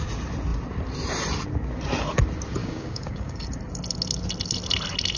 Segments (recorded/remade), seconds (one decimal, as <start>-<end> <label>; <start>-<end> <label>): 0.0-2.6 recorded; 2.6-3.4 remade; 3.4-5.2 recorded